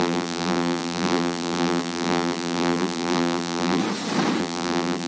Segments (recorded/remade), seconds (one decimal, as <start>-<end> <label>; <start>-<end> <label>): 0.0-3.8 remade; 3.8-4.4 recorded; 4.4-5.1 remade